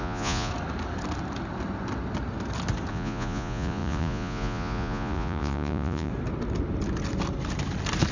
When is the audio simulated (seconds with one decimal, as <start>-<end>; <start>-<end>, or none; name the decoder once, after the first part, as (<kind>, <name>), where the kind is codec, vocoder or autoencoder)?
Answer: 0.0-0.5 (vocoder, Vocos); 2.9-6.1